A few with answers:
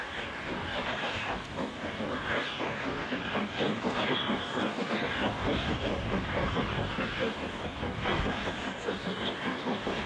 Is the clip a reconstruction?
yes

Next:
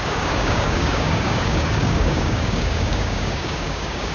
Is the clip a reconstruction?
yes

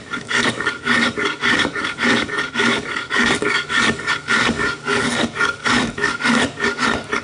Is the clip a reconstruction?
yes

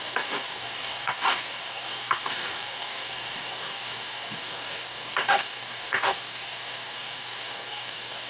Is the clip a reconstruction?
yes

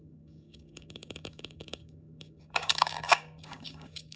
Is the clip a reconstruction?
yes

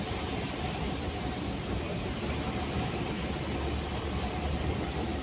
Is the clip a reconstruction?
no